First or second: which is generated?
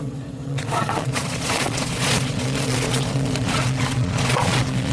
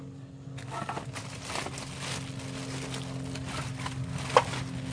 first